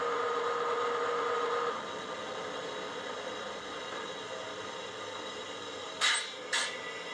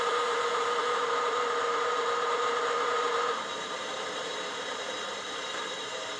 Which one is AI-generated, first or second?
second